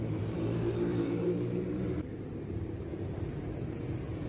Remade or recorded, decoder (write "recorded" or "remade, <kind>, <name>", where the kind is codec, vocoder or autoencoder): remade, vocoder, BigVGAN v2